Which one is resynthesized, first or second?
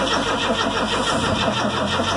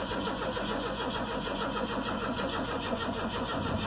second